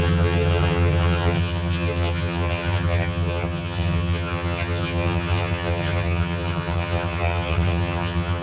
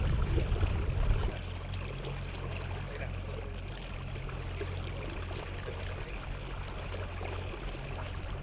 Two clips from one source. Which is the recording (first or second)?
second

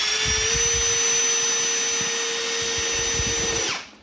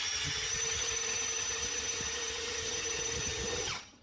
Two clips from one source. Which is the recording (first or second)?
first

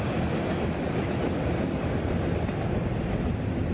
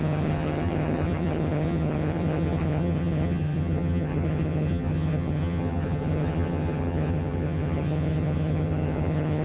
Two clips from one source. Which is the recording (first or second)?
first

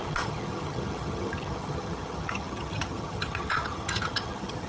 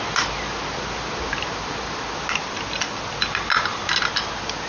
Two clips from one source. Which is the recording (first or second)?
second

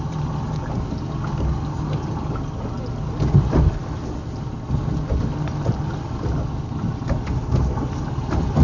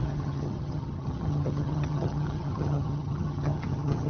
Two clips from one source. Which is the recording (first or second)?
first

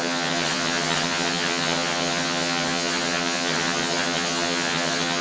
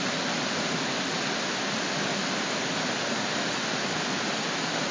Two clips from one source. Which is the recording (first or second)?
second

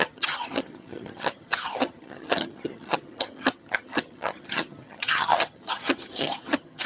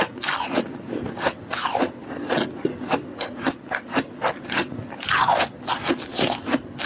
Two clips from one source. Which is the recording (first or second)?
second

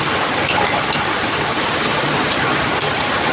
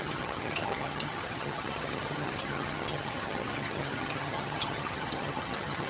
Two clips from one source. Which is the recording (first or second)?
first